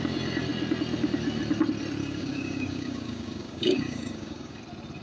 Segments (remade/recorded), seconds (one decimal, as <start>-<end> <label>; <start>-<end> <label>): 0.0-2.0 recorded; 2.0-4.6 remade; 4.6-5.0 recorded